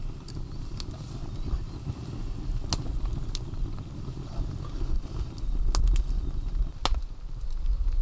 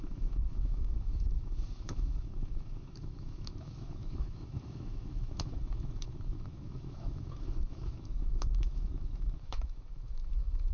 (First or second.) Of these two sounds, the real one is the first